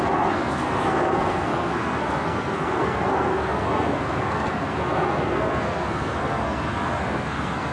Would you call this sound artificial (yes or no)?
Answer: yes